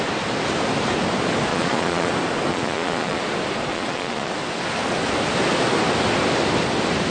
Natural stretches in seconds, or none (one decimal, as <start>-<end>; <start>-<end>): 0.0-1.5; 2.1-2.5; 3.2-3.7; 4.3-7.1